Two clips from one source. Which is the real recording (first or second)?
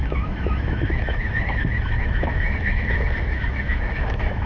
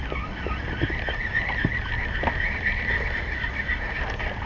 second